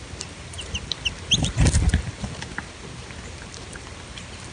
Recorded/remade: recorded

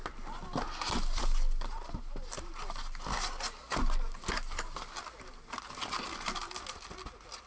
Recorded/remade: recorded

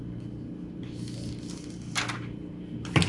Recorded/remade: recorded